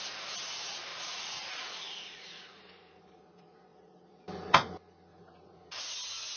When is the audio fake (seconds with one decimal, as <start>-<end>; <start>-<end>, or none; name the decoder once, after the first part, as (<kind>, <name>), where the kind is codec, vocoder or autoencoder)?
0.9-2.6 (vocoder, Vocos); 5.1-5.8